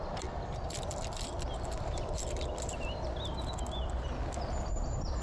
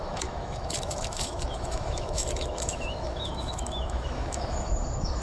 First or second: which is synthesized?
second